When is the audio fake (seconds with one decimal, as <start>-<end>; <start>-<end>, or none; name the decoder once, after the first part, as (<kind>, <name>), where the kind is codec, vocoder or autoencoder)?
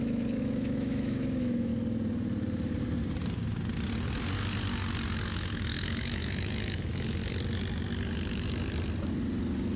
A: 0.0-1.7 (autoencoder, DAC-VAE); 5.3-7.2